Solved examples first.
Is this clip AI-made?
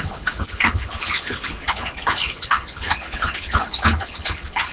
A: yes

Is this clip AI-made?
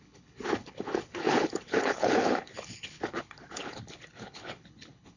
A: yes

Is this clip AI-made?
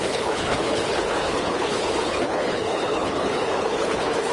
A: yes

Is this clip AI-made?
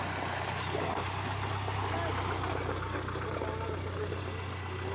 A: no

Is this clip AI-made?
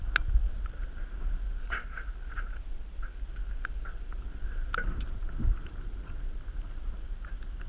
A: no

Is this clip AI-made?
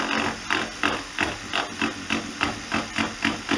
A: no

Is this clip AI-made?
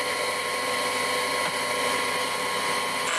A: no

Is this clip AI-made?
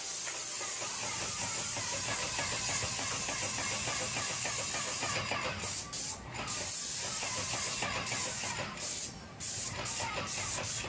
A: no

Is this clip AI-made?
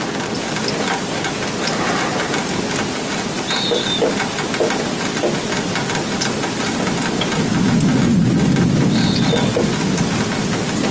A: no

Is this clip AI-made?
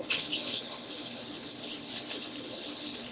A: yes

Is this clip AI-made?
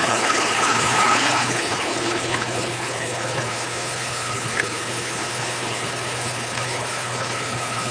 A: yes